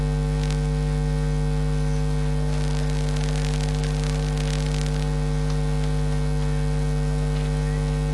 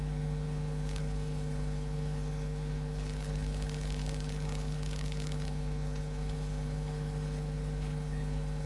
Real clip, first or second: first